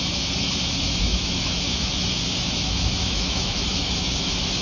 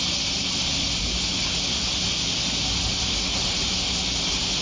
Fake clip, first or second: first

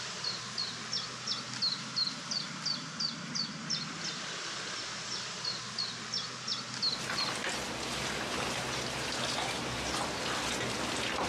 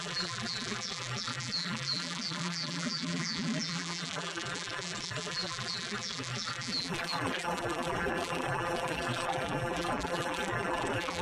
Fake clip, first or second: second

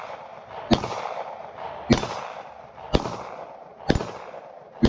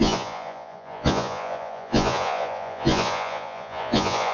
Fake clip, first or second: second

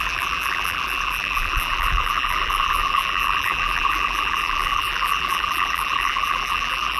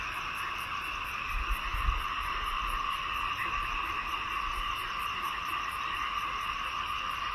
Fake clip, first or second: first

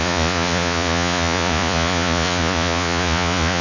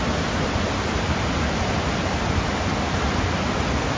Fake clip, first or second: first